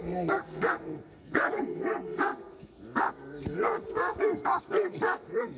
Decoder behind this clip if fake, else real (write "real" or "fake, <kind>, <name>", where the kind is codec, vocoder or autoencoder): fake, codec, SNAC